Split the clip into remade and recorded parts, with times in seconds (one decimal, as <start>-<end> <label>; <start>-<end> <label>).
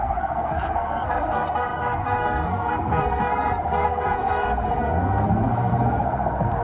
0.0-6.6 remade